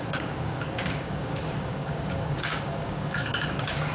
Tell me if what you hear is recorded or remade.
remade